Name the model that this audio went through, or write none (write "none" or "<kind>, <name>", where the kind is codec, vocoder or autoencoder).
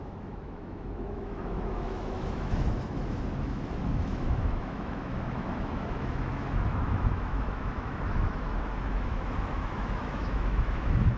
autoencoder, DAC-VAE